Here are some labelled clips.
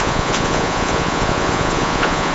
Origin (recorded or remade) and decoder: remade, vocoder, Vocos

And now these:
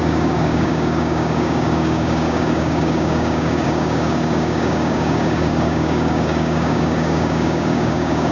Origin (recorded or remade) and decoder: remade, codec, DAC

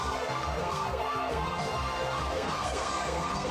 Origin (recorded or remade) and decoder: remade, codec, SNAC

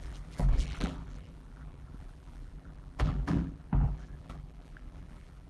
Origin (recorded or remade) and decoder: remade, vocoder, BigVGAN v2